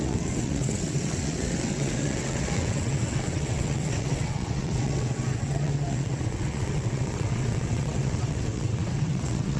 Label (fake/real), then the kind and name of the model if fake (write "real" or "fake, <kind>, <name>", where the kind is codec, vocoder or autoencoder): fake, vocoder, WaveNeXt